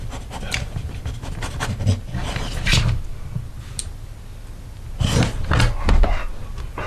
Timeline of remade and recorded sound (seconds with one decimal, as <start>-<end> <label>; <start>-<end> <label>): 0.0-6.9 recorded